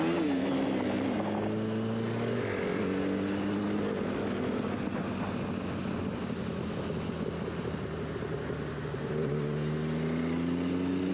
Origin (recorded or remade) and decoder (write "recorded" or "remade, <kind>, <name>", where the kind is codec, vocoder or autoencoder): recorded